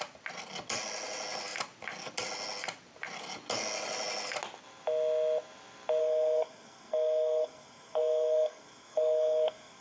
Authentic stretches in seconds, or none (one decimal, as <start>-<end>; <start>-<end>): 0.0-6.0